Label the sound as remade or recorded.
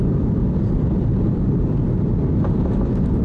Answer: remade